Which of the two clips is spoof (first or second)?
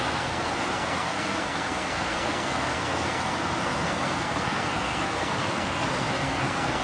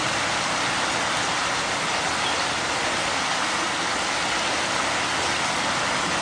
first